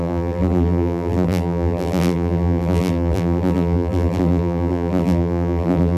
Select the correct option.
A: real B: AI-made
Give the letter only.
B